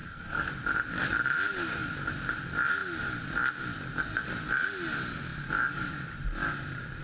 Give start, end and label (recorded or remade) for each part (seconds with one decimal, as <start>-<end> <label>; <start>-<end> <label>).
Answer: 0.0-0.5 remade; 0.5-7.0 recorded